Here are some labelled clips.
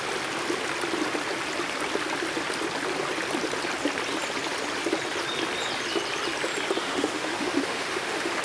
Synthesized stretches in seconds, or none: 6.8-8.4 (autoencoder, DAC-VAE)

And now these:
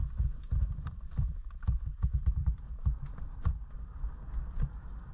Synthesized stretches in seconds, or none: 0.6-3.7 (vocoder, BigVGAN v2)